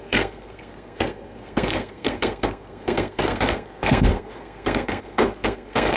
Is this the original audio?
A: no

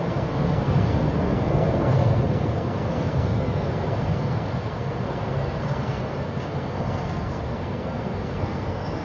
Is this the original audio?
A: no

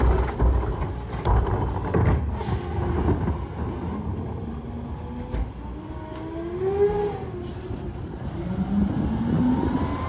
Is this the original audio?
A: yes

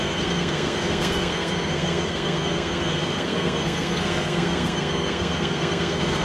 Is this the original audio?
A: no